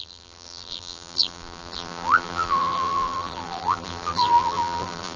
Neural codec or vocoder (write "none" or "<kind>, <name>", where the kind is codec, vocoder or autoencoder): vocoder, BigVGAN v2